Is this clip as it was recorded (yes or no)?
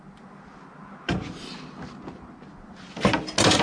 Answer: yes